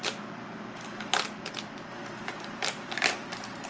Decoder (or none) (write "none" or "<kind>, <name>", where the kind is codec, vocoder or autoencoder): none